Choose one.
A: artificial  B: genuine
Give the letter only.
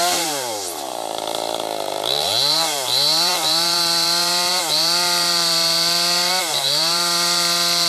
A